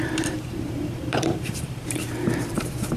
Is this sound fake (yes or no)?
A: yes